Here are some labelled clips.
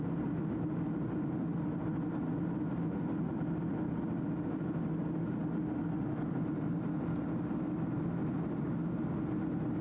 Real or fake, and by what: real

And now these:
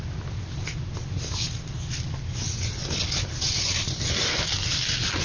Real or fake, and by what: real